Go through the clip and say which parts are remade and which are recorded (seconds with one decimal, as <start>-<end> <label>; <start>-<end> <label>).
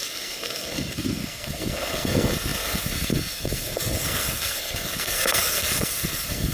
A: 0.0-6.5 remade